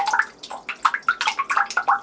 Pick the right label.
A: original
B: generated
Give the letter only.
A